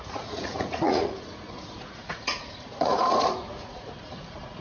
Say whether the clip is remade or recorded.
remade